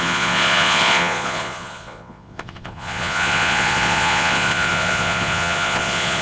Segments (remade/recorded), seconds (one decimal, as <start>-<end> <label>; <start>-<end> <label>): 0.0-6.2 remade